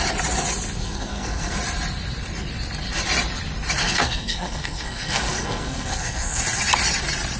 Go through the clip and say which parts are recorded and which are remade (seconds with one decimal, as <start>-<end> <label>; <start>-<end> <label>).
0.0-0.8 recorded; 0.8-1.6 remade; 1.6-3.8 recorded; 3.8-6.4 remade; 6.4-7.4 recorded

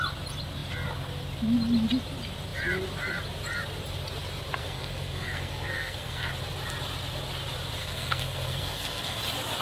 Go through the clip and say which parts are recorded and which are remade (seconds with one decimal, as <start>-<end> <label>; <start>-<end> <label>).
0.0-4.6 recorded; 4.6-6.3 remade; 6.3-7.8 recorded; 7.8-9.2 remade; 9.2-9.6 recorded

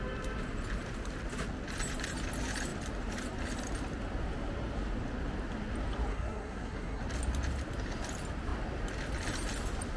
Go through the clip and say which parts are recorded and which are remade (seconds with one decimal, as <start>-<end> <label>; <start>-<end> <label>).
0.0-6.1 recorded; 6.1-7.0 remade; 7.0-10.0 recorded